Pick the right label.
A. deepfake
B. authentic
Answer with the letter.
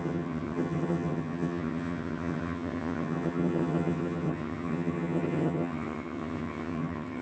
A